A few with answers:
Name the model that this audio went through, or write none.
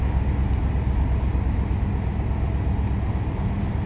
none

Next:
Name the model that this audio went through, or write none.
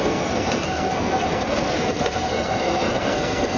codec, SNAC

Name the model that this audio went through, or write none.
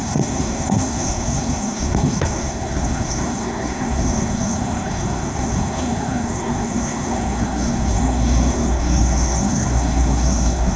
codec, SNAC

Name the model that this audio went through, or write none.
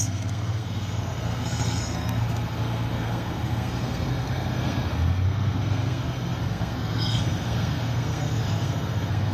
codec, SNAC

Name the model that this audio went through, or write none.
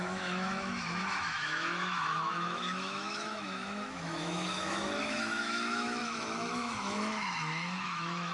autoencoder, DAC-VAE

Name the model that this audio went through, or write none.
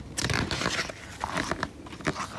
none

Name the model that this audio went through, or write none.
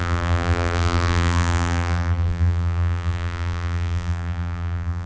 vocoder, BigVGAN v2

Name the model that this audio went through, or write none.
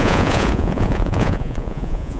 vocoder, Vocos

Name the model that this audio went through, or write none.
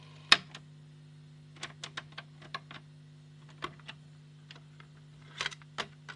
none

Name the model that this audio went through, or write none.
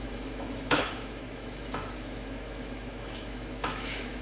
autoencoder, DAC-VAE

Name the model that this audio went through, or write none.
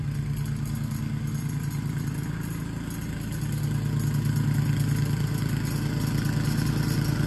none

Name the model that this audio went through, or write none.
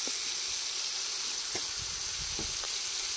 none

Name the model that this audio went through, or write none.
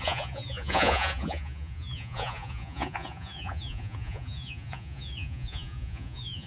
vocoder, Vocos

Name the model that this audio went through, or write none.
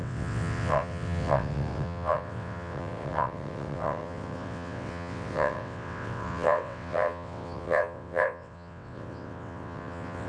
vocoder, WaveNeXt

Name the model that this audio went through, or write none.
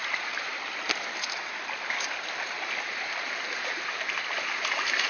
none